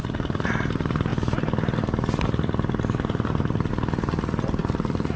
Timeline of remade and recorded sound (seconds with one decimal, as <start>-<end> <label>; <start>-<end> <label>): 0.0-5.2 recorded